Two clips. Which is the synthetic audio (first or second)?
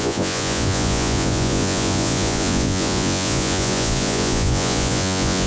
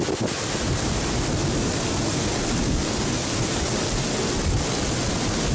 first